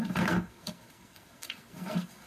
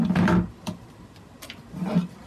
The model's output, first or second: first